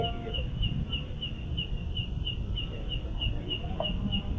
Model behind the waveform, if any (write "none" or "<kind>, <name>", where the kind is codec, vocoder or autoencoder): none